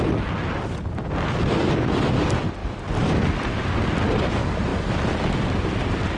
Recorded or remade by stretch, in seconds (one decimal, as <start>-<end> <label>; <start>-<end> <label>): 0.0-2.6 recorded; 2.6-3.5 remade; 3.5-6.2 recorded